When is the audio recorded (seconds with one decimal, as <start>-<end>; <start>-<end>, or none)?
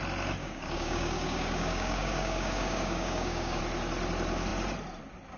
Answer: 0.0-0.4; 3.6-5.4